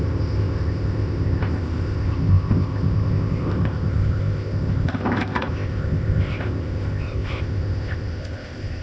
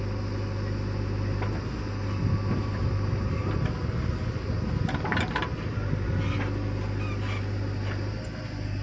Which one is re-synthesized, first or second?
first